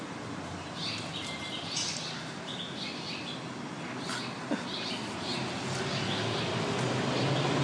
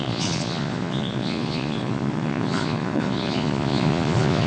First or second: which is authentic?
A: first